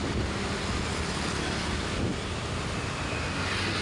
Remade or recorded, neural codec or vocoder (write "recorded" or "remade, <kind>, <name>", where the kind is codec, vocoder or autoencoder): recorded